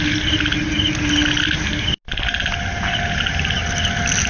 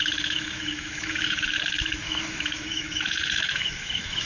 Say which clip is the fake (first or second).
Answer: second